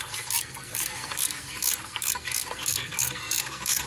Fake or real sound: fake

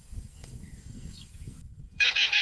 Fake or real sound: fake